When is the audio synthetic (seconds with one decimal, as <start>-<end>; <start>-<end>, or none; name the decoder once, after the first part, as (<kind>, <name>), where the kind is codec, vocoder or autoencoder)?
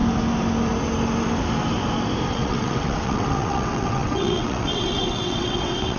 2.3-6.0 (vocoder, WaveNeXt)